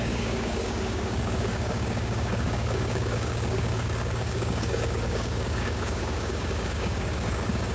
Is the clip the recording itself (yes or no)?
no